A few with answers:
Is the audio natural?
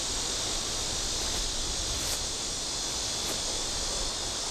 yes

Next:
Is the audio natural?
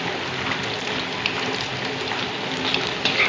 yes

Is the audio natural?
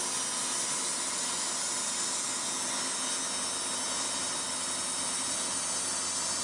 yes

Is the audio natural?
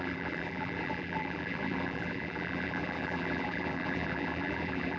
no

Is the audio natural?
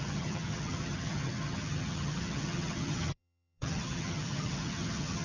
no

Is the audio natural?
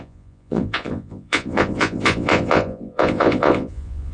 no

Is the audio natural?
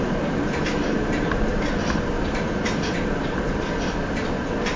no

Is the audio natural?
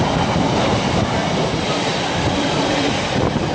yes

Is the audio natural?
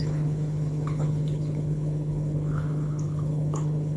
no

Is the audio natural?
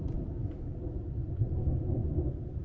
yes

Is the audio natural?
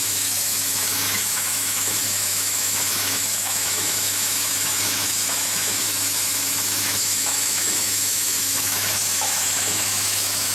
no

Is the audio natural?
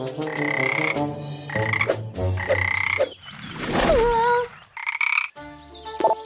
yes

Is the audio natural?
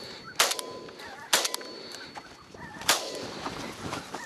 yes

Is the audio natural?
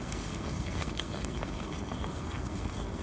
no